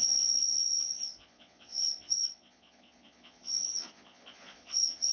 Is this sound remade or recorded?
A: remade